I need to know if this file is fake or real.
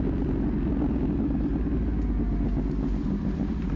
real